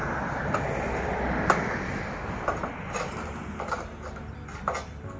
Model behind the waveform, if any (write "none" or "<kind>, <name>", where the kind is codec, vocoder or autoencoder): none